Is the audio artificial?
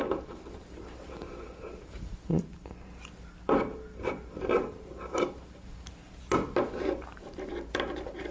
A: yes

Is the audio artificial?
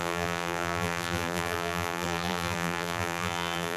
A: yes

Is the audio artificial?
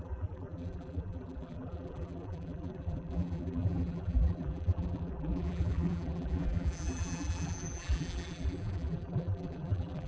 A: yes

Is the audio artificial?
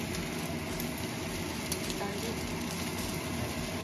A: no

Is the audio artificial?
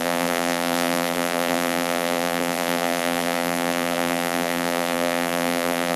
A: yes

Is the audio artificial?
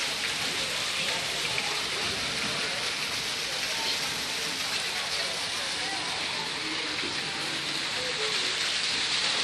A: no